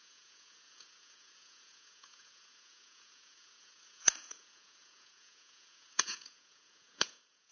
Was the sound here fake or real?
fake